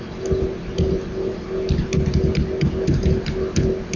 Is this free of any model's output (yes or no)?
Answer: yes